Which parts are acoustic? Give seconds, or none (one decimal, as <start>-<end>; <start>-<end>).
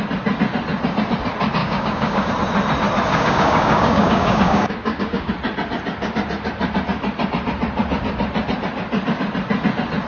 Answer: 0.0-1.6; 2.3-3.1; 5.3-10.1